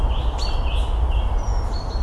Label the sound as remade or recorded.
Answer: recorded